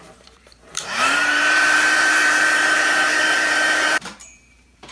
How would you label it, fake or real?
fake